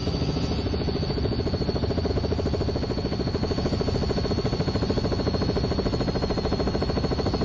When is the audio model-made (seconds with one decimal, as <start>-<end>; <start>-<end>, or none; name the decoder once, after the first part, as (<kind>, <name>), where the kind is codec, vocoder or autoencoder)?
0.0-7.4 (vocoder, Vocos)